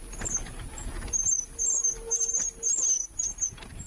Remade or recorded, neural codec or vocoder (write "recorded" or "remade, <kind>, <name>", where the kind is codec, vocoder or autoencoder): recorded